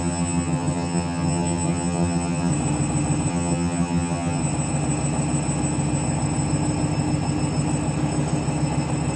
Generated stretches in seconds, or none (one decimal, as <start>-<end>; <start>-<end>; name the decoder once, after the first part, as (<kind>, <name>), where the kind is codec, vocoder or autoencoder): 0.0-2.5 (vocoder, HiFi-GAN); 3.3-4.4